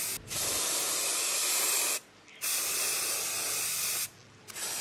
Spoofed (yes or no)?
no